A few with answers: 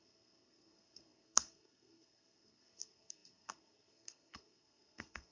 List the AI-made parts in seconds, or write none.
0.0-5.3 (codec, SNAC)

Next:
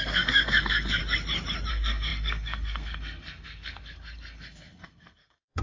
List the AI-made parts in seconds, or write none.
0.0-1.0 (codec, SNAC); 1.7-5.6

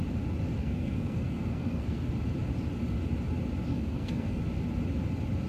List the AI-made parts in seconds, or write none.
0.6-2.1 (codec, SNAC); 3.7-4.4

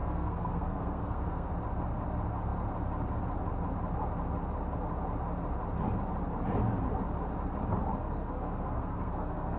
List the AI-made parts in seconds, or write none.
0.0-1.5 (codec, SNAC); 8.0-9.6